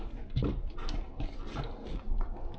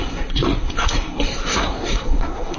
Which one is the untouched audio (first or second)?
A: first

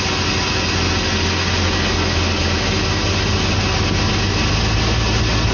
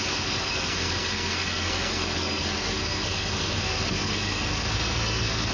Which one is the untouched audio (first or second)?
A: first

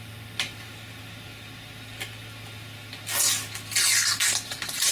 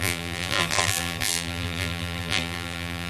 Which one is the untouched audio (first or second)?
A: first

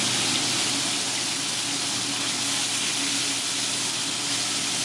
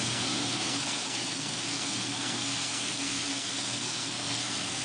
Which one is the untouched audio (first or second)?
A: first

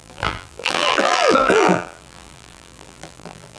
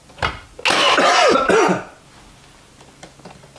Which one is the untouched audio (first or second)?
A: second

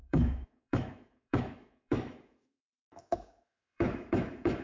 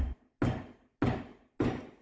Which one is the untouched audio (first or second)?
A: second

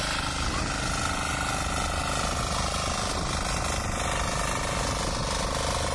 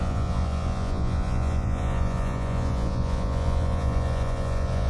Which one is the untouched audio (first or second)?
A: first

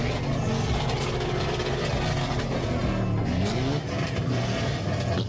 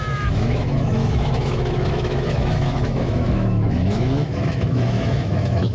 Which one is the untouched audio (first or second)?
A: first